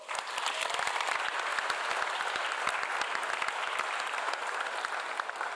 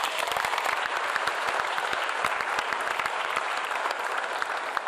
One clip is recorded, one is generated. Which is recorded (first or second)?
first